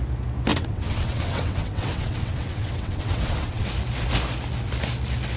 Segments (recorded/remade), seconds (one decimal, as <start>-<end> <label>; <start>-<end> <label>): 0.0-0.5 recorded; 0.5-3.7 remade; 3.7-5.4 recorded